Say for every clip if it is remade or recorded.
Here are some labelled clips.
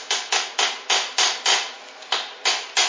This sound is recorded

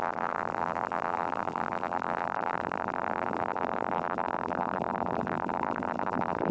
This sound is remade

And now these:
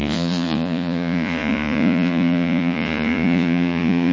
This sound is remade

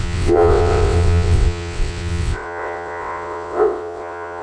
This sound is remade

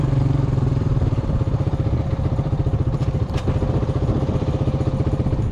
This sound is remade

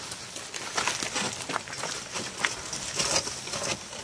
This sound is recorded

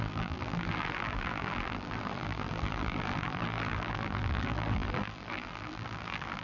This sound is remade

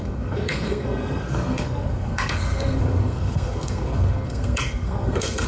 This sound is remade